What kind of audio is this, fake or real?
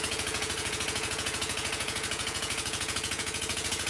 fake